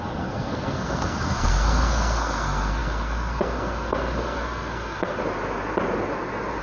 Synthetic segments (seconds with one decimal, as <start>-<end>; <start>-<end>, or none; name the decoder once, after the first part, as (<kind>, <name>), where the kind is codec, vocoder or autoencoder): 0.0-5.2 (codec, SNAC)